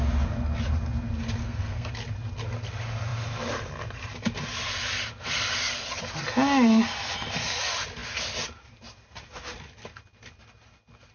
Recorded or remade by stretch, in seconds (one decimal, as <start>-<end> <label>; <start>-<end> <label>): 0.0-1.4 recorded; 1.4-1.9 remade; 1.9-11.1 recorded